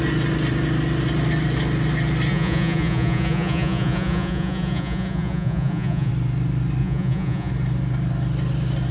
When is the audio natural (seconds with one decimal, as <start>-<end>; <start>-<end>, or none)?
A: 0.0-2.3; 6.1-6.8; 7.5-8.9